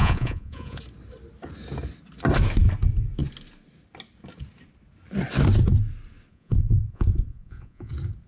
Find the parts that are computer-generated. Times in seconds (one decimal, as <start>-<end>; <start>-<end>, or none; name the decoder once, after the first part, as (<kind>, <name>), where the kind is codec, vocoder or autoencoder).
0.0-0.8 (vocoder, Vocos); 6.3-7.9